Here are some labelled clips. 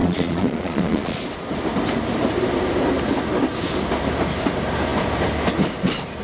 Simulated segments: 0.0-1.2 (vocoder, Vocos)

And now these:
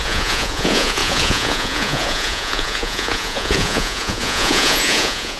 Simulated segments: 0.0-5.4 (vocoder, Vocos)